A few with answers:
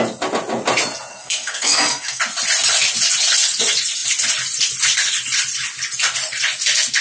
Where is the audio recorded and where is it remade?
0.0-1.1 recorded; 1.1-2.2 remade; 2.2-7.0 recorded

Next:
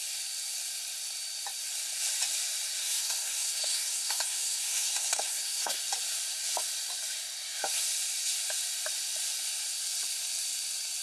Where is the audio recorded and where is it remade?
0.0-2.8 recorded; 2.8-5.8 remade; 5.8-11.0 recorded

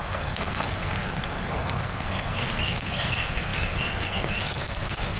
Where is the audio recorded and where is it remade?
0.0-5.2 remade